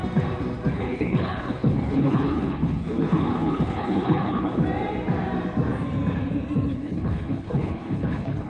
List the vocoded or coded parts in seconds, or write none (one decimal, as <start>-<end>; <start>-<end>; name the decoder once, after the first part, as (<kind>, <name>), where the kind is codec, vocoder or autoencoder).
0.7-4.6 (codec, HILCodec); 6.7-8.5